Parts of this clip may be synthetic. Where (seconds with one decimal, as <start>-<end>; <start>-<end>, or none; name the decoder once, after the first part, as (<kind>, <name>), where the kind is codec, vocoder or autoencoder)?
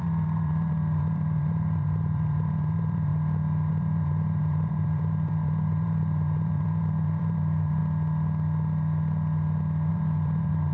0.0-3.1 (vocoder, BigVGAN v2); 3.7-7.8; 9.9-10.7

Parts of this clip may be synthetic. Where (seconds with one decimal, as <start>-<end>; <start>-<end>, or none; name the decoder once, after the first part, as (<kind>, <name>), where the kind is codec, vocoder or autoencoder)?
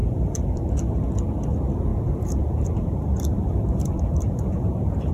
0.0-0.7 (vocoder, BigVGAN v2); 1.9-5.1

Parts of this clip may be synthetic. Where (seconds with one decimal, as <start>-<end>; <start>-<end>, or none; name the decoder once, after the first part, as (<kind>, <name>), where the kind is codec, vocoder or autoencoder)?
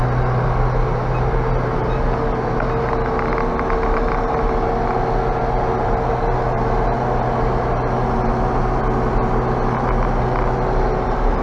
none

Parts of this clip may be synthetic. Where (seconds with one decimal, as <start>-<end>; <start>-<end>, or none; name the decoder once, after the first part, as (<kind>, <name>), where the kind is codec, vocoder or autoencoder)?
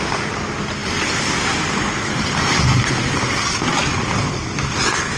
none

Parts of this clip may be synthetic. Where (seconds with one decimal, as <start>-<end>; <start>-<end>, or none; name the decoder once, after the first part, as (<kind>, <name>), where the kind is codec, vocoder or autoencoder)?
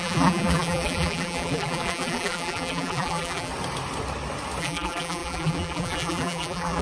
0.0-3.5 (vocoder, BigVGAN v2); 4.6-6.8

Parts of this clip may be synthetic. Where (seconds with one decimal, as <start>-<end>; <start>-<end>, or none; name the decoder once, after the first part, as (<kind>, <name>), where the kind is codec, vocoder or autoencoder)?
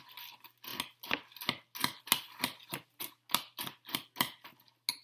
none